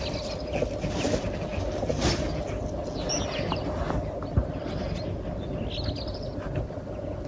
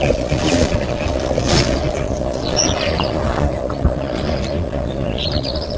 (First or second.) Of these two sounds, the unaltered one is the first